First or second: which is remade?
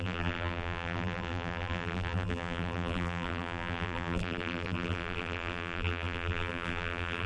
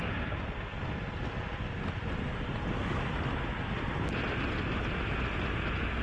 first